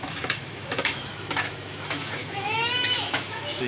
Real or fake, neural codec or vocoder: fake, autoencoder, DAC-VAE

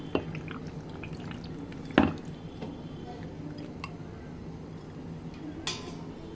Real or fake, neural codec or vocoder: real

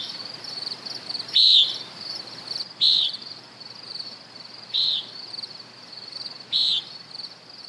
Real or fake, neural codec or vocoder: fake, vocoder, BigVGAN v2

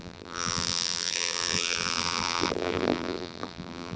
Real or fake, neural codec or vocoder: fake, vocoder, BigVGAN v2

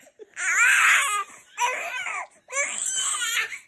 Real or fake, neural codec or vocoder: real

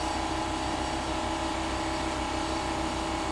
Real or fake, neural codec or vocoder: real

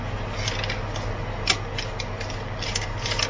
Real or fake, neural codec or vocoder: real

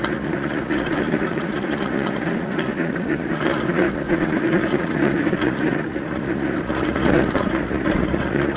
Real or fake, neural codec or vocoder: fake, vocoder, Vocos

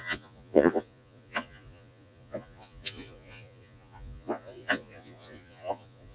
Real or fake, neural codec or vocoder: fake, vocoder, Vocos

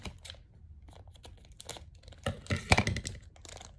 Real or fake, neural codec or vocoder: real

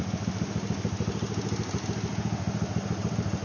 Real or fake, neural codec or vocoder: real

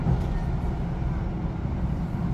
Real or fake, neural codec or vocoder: real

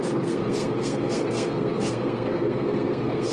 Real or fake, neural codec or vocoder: fake, codec, SNAC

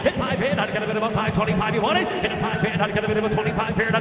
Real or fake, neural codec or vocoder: real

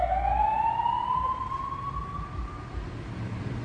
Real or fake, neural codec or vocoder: real